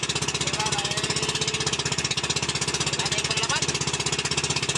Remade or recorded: recorded